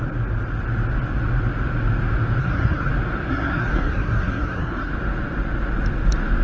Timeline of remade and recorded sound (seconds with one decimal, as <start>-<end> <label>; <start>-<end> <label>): 0.0-2.4 recorded; 2.4-2.9 remade; 2.9-3.3 recorded; 3.3-4.9 remade; 4.9-6.4 recorded